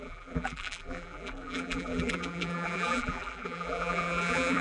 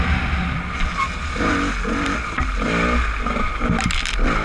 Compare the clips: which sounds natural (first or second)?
second